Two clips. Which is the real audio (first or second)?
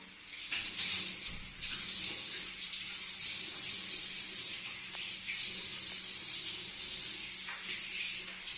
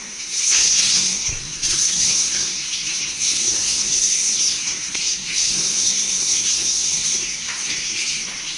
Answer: first